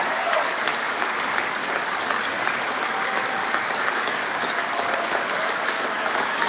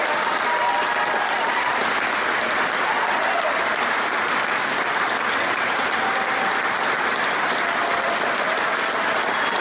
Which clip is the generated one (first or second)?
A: first